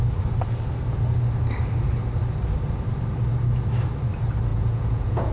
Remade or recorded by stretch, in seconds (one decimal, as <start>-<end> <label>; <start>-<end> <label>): 0.0-4.5 recorded; 4.5-5.3 remade